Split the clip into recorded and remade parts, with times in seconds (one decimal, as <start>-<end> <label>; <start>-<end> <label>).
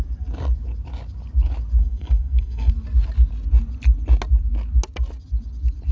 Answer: 0.0-1.8 recorded; 1.8-2.7 remade; 2.7-5.9 recorded